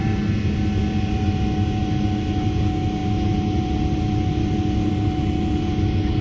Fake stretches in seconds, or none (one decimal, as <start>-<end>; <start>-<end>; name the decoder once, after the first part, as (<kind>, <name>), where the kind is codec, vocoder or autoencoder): none